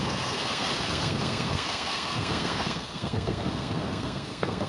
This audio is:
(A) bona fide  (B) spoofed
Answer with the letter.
B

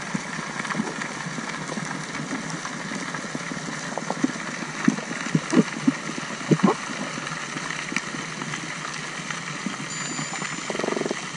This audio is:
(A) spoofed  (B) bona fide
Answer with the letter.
B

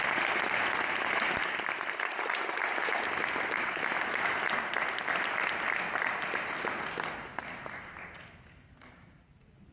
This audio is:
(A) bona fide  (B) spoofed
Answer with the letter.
A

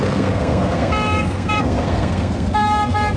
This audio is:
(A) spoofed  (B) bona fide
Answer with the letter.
A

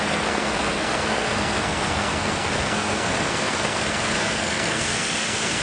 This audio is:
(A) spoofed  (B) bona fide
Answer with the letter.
A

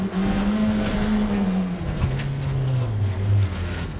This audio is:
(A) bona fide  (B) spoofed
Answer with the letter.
B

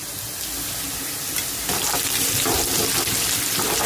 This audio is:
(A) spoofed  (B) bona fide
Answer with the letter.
B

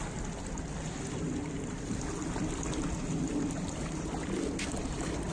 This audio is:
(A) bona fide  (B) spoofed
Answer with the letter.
A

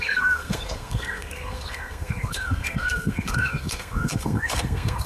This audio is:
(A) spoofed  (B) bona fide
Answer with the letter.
A